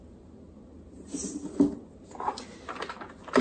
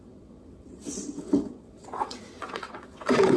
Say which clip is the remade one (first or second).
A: second